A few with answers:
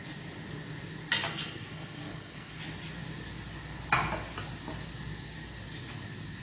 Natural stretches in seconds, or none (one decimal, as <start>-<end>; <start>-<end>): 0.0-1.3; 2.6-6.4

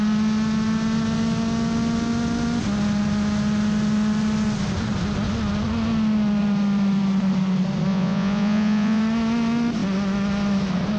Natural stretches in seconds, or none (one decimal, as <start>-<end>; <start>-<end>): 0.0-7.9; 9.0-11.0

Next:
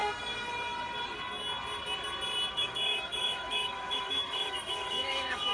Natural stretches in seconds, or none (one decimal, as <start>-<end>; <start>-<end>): 0.0-2.5

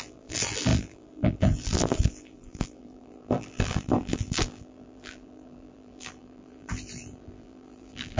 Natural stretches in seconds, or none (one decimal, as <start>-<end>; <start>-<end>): none

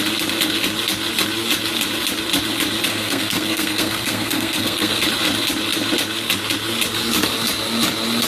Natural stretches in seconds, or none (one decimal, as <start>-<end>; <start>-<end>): 0.0-2.9; 5.0-8.3